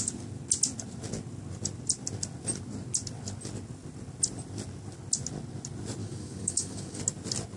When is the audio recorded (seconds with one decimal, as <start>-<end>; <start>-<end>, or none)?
0.0-6.0; 7.0-7.6